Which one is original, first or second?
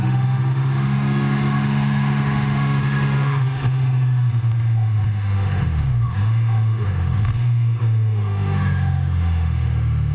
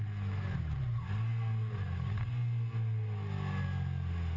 second